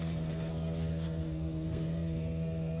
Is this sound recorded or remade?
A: remade